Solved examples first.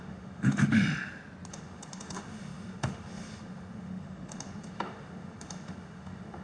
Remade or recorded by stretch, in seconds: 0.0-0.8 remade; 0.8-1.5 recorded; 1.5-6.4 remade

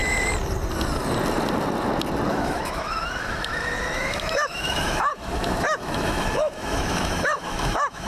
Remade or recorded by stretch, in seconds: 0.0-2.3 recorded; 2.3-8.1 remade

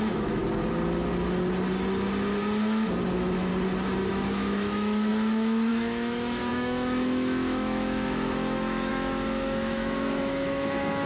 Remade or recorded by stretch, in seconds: 0.0-0.4 remade; 0.4-3.1 recorded; 3.1-3.5 remade; 3.5-4.1 recorded; 4.1-11.1 remade

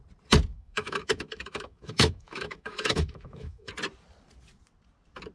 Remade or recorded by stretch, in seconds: 0.0-0.5 recorded; 0.5-3.7 remade; 3.7-5.3 recorded